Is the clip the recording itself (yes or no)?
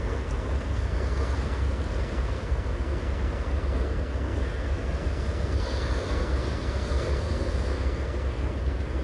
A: no